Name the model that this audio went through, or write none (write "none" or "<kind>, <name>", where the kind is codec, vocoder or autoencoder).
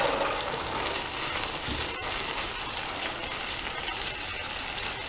none